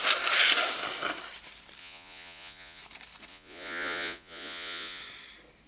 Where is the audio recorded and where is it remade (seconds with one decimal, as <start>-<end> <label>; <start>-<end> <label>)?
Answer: 0.0-1.8 recorded; 1.8-2.8 remade; 2.8-3.3 recorded; 3.3-5.0 remade; 5.0-5.7 recorded